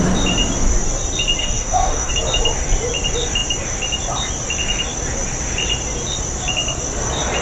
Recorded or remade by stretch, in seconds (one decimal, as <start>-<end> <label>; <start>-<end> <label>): 0.0-1.4 recorded; 1.4-2.1 remade; 2.1-7.4 recorded